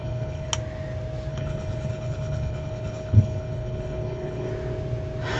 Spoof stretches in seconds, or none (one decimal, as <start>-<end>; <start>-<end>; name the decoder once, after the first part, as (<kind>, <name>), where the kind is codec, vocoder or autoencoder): 0.0-0.5 (codec, HILCodec); 1.3-4.5